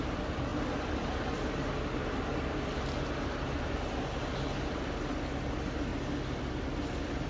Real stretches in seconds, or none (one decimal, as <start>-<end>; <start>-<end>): 0.0-7.3